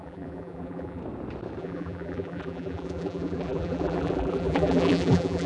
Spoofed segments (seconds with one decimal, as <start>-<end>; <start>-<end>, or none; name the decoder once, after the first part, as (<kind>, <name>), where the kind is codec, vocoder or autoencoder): 0.0-1.0 (vocoder, BigVGAN v2); 1.6-5.5

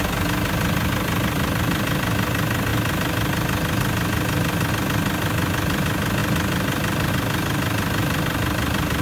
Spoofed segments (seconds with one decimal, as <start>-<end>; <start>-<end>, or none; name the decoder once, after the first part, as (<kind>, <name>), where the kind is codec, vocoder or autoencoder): 6.2-7.1 (vocoder, BigVGAN v2)

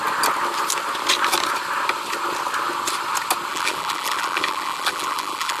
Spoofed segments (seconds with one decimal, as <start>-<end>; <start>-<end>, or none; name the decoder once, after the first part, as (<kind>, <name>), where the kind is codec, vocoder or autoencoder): 3.5-5.6 (vocoder, BigVGAN v2)

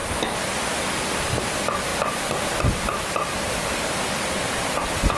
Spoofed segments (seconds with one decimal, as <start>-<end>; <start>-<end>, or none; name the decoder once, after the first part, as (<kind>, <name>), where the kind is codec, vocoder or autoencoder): none

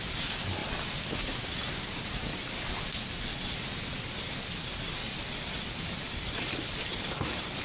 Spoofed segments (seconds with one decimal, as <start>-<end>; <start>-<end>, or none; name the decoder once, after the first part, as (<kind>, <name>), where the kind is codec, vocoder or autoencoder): 0.0-0.6 (vocoder, BigVGAN v2); 1.8-2.3; 2.8-3.3; 4.5-5.0; 5.7-7.6

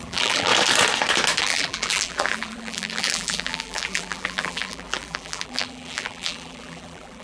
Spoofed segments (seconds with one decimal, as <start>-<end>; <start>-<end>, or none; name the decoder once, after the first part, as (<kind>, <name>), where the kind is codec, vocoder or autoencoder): 0.0-0.5 (vocoder, BigVGAN v2); 1.4-7.2